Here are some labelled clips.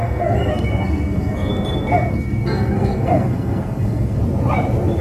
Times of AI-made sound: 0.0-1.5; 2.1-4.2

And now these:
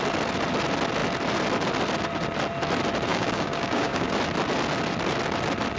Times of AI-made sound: 3.1-4.1

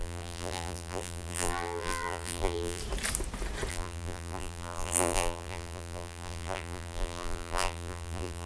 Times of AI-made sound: 0.0-2.8; 3.7-8.5